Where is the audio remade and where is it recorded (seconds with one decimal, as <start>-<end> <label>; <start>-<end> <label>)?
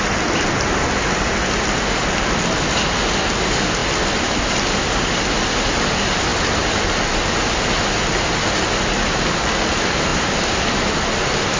0.0-11.6 recorded